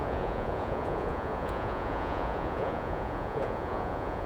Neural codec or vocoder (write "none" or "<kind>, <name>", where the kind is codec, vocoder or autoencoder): vocoder, Vocos